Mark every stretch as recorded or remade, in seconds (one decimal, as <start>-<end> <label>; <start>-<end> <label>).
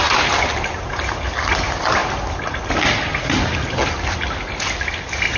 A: 0.0-5.4 recorded